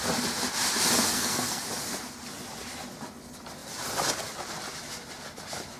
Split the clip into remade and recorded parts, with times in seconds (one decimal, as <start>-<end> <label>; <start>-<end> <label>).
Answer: 0.0-1.1 recorded; 1.1-1.6 remade; 1.6-5.8 recorded